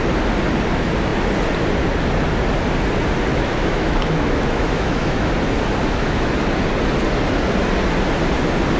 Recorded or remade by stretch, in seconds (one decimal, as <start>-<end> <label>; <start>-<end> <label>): 0.0-3.3 recorded; 3.3-5.3 remade; 5.3-5.8 recorded; 5.8-6.3 remade; 6.3-8.8 recorded

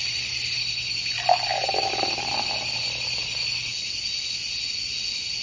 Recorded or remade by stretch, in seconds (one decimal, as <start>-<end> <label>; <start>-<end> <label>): 0.0-5.4 recorded

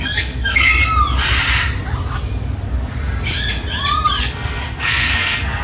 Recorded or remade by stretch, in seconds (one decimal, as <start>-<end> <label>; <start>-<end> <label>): 0.0-0.8 remade; 0.8-4.2 recorded; 4.2-5.6 remade